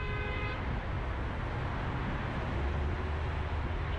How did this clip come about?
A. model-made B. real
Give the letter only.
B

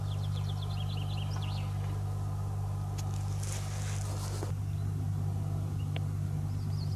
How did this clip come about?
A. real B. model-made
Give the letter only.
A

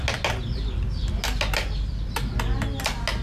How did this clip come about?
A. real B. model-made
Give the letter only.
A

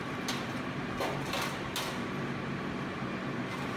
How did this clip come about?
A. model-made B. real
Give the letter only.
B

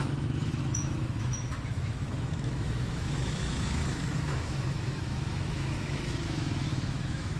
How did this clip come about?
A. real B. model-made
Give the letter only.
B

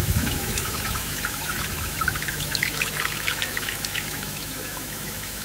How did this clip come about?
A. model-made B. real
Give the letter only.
A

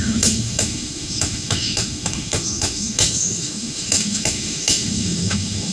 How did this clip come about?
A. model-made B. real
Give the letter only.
A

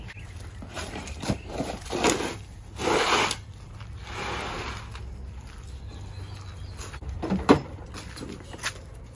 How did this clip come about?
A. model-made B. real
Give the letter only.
B